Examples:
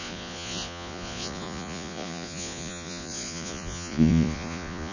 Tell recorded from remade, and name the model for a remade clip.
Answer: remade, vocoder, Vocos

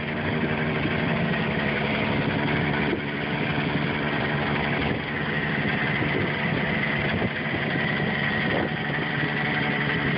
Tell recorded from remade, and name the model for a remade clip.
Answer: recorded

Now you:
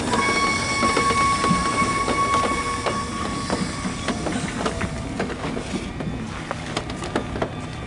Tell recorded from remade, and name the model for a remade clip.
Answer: recorded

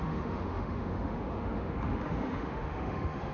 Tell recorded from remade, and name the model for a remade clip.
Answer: remade, autoencoder, DAC-VAE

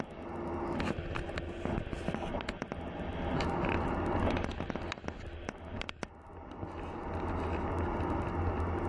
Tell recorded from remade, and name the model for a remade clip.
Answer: recorded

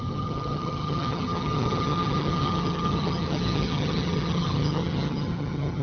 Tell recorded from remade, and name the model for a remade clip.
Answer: remade, vocoder, HiFi-GAN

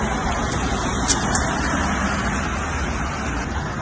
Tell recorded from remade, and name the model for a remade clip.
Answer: recorded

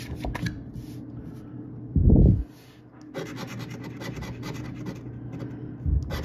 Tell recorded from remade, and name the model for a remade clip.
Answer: recorded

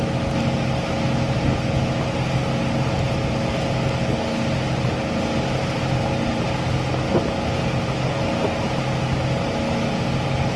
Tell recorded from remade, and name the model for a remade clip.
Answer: recorded